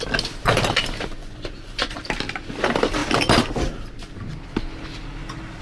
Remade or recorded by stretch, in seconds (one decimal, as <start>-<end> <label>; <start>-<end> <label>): 0.0-1.2 recorded; 1.2-2.0 remade; 2.0-5.6 recorded